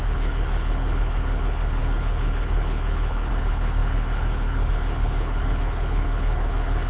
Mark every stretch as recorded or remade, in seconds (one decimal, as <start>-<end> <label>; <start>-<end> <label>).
0.0-6.9 remade